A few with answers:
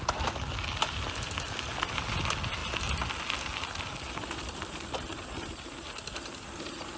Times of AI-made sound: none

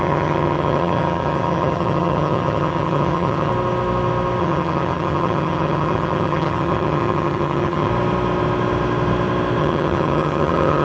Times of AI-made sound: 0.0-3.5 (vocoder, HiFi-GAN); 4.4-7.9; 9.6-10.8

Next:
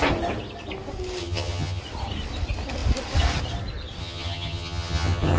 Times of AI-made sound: 1.2-1.8 (vocoder, HiFi-GAN); 4.0-5.4